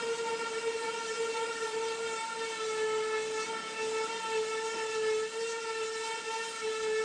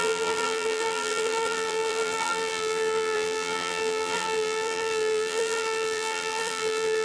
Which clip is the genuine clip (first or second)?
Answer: first